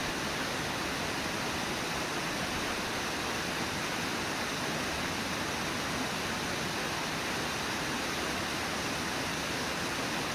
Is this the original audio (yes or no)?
yes